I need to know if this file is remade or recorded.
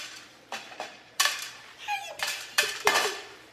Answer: remade